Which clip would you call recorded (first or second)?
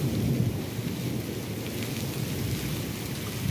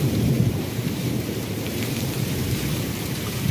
first